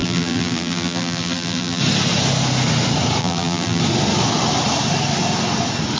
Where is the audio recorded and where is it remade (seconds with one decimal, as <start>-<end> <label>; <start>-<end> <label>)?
0.0-1.8 remade; 1.8-3.2 recorded; 3.2-3.8 remade; 3.8-6.0 recorded